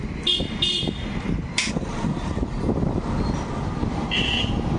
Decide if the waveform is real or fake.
real